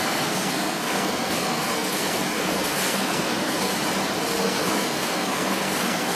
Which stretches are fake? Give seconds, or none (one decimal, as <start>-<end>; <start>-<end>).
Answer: 0.0-3.7; 4.3-6.1